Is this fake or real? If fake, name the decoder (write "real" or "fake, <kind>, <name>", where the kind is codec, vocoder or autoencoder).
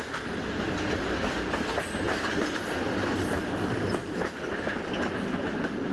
real